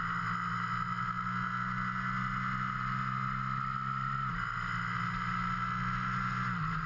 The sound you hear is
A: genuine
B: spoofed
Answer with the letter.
A